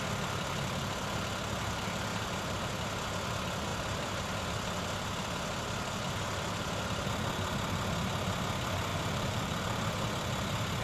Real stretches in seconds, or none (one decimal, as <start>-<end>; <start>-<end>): 0.0-2.1; 2.6-8.9; 9.6-10.8